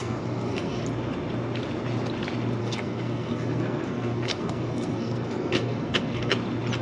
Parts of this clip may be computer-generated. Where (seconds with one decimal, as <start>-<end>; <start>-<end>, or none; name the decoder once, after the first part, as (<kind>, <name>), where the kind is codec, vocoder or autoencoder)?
0.0-0.8 (codec, SNAC); 2.6-6.3